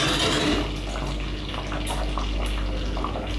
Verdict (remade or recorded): recorded